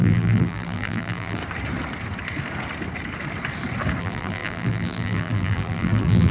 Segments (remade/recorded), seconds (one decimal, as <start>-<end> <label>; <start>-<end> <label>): 0.0-1.4 remade; 1.4-4.0 recorded; 4.0-6.3 remade